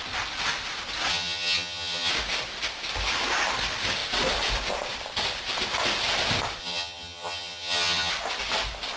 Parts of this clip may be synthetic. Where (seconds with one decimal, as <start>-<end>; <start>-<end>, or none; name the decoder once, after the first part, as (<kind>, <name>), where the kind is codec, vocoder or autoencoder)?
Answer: 1.1-2.1 (vocoder, HiFi-GAN); 6.6-8.1